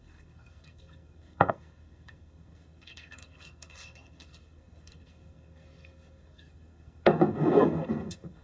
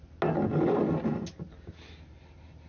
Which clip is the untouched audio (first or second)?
second